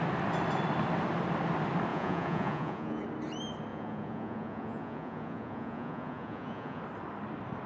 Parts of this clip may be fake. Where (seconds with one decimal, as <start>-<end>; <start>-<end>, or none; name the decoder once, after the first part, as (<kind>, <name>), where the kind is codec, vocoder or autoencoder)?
1.9-3.0 (vocoder, Vocos); 3.7-6.8